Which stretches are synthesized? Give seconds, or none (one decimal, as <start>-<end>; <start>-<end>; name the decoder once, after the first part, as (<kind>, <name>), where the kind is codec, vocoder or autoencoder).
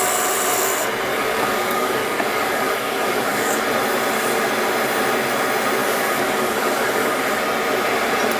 1.1-3.6 (codec, DAC); 5.8-7.2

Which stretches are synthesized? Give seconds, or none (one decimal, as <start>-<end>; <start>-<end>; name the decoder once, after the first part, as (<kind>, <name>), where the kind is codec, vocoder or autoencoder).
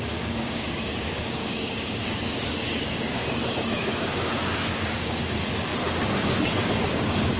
0.0-7.4 (codec, DAC)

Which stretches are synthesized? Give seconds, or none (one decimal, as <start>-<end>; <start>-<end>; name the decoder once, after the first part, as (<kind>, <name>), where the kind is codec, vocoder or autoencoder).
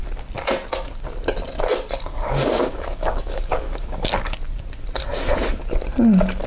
2.1-4.1 (codec, DAC)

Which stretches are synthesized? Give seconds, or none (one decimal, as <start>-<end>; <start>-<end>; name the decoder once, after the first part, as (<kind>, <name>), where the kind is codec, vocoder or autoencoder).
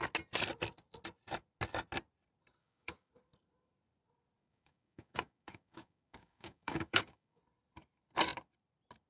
2.6-3.1 (codec, DAC); 4.4-7.4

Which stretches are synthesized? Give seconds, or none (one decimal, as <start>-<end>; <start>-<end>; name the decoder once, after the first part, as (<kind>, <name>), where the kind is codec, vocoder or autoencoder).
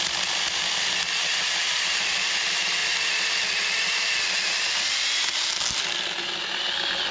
none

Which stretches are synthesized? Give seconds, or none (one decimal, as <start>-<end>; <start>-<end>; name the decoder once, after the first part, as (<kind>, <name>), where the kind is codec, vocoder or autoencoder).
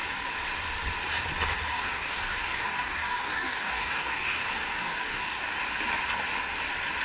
1.7-5.4 (codec, DAC)